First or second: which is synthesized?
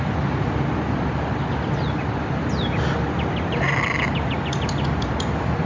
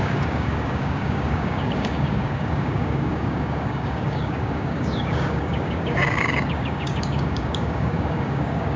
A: second